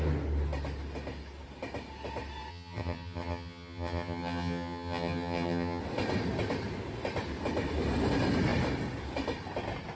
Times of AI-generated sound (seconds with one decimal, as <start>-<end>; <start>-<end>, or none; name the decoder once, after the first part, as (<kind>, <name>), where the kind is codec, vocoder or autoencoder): 2.5-5.8 (vocoder, HiFi-GAN)